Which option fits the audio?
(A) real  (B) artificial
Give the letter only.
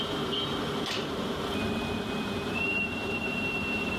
B